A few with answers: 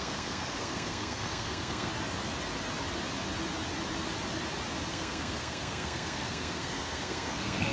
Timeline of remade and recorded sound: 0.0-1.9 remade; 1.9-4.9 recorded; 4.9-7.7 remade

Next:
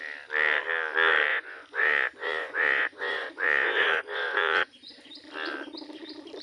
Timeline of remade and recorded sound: 0.0-1.3 recorded; 1.3-5.1 remade; 5.1-6.4 recorded

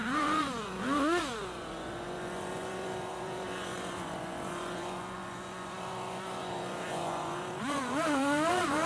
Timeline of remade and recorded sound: 0.0-8.9 remade

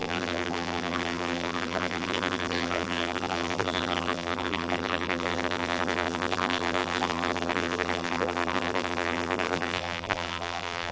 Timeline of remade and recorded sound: 0.0-10.9 remade

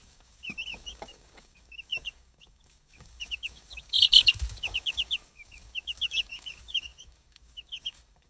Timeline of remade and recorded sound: 0.0-8.3 remade